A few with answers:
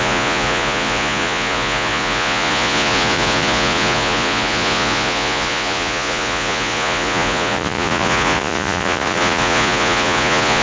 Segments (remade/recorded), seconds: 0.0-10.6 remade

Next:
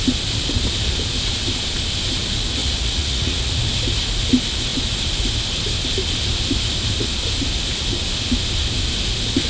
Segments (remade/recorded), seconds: 0.0-2.6 recorded; 2.6-3.6 remade; 3.6-9.5 recorded

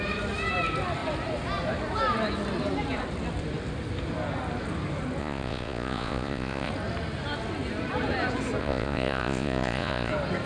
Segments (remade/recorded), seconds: 0.0-5.2 recorded; 5.2-6.7 remade; 6.7-8.6 recorded; 8.6-10.1 remade; 10.1-10.5 recorded

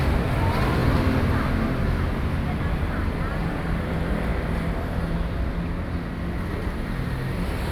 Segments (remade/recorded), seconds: 0.0-7.7 recorded

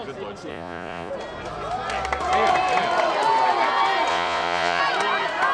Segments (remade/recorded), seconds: 0.0-0.5 recorded; 0.5-1.1 remade; 1.1-4.1 recorded; 4.1-4.8 remade; 4.8-5.5 recorded

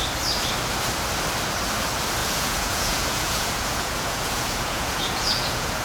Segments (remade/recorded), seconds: 0.0-2.2 recorded; 2.2-5.8 remade

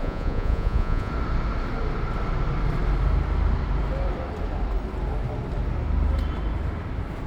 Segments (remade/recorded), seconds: 0.0-1.1 remade; 1.1-7.3 recorded

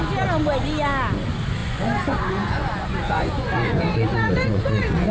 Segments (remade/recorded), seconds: 0.0-1.6 recorded; 1.6-5.1 remade